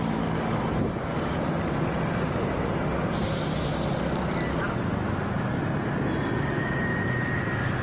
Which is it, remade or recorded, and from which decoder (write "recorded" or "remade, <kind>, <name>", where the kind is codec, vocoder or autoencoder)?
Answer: recorded